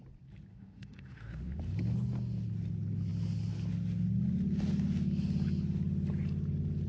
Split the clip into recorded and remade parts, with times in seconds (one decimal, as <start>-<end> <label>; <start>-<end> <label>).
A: 0.0-0.5 recorded; 0.5-1.6 remade; 1.6-6.9 recorded